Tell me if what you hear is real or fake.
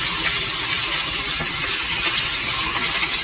fake